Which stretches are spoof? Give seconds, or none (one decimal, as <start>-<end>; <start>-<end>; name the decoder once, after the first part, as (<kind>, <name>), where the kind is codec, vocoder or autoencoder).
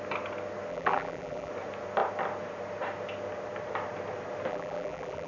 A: 0.7-1.5 (vocoder, BigVGAN v2); 4.5-5.3